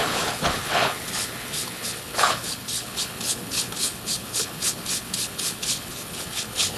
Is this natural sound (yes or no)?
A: no